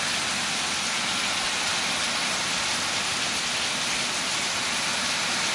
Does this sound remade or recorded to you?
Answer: recorded